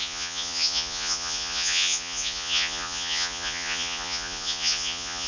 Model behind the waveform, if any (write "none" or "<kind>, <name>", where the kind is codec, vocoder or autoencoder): vocoder, Vocos